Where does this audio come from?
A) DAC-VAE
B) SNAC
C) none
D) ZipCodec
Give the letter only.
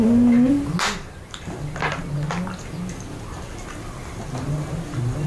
C